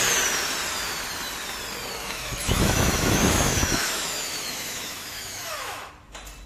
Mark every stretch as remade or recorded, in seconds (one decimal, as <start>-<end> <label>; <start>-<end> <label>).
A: 0.0-2.0 recorded; 2.0-5.9 remade; 5.9-6.5 recorded